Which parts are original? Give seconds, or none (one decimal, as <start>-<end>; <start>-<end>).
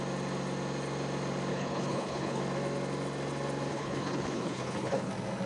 0.0-1.5; 2.4-3.7; 5.1-5.5